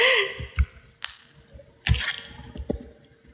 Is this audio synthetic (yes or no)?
no